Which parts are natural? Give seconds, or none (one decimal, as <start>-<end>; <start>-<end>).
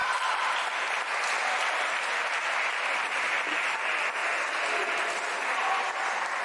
0.0-6.4